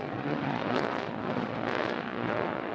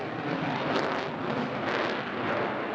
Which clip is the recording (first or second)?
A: second